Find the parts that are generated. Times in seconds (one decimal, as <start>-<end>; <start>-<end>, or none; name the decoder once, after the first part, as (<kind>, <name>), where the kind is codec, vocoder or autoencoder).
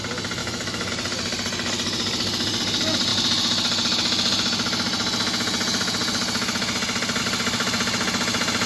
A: 0.4-0.9 (autoencoder, DAC-VAE)